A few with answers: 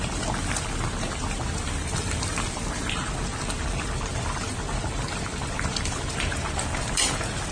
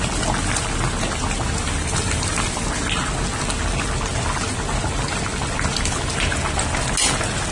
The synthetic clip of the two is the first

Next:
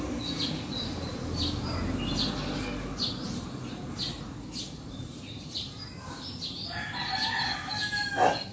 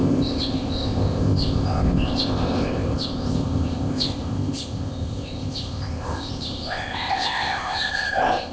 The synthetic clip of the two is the second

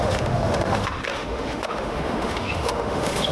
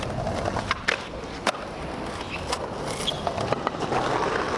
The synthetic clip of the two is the first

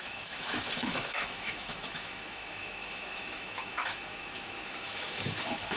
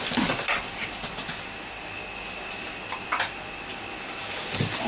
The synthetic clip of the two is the first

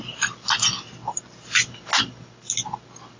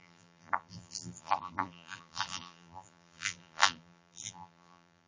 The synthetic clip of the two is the second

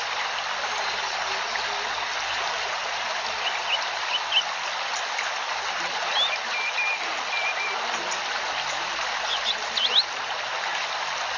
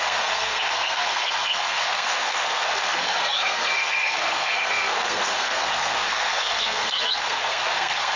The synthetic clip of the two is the second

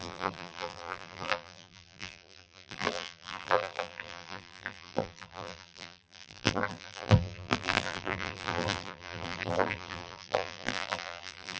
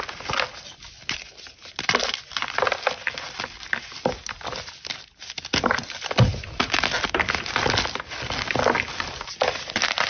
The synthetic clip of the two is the first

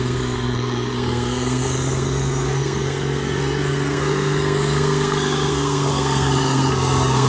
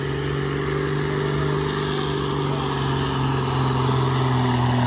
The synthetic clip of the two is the first